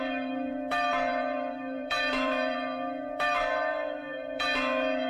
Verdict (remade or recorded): remade